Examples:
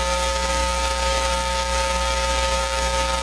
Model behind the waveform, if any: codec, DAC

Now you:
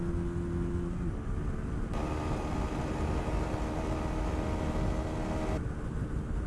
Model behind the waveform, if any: none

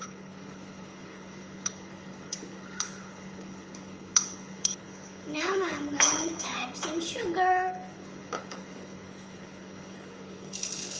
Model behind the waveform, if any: codec, HILCodec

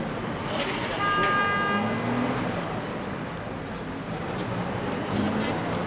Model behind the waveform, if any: none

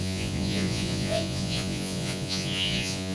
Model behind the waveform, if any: vocoder, Vocos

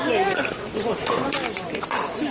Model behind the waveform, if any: none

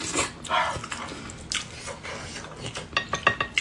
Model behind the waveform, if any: none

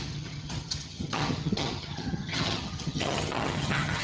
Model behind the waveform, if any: vocoder, HiFi-GAN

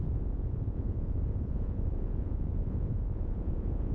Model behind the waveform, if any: vocoder, Vocos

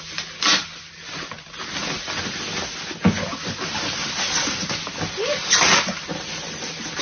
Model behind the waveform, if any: none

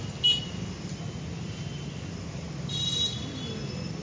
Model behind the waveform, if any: none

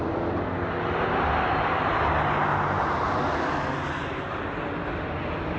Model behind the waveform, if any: none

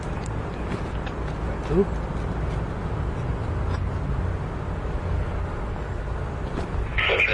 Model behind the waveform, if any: none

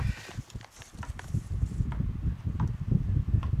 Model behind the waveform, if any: none